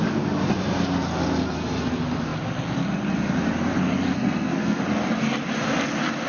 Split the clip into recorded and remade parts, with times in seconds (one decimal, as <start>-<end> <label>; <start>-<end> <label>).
0.0-4.1 recorded; 4.1-4.8 remade; 4.8-6.3 recorded